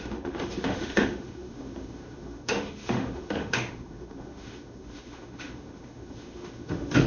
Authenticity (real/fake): fake